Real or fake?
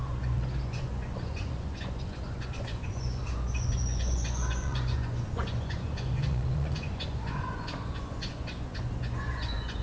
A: fake